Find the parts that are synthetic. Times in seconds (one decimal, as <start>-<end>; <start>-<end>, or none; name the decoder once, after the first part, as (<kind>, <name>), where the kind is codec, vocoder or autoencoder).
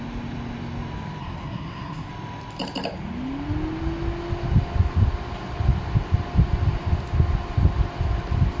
1.2-2.1 (codec, SNAC)